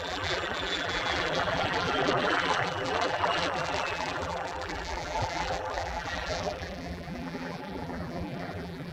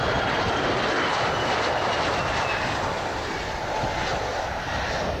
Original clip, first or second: second